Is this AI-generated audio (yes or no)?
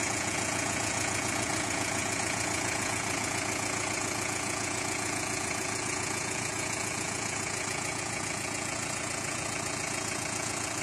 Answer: yes